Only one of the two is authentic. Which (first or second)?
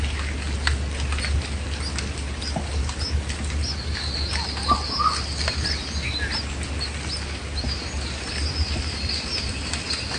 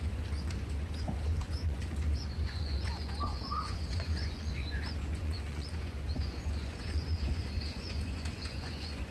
first